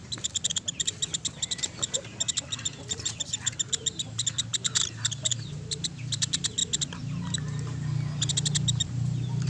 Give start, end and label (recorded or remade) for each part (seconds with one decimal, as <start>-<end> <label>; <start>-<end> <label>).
0.0-6.6 remade; 6.6-8.8 recorded; 8.8-9.5 remade